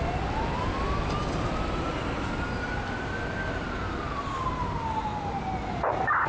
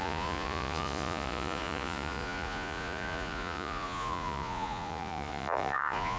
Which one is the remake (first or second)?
second